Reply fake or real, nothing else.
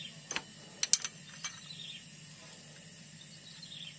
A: real